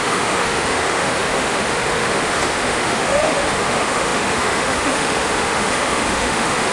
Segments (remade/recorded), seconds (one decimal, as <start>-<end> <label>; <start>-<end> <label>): 0.0-6.7 remade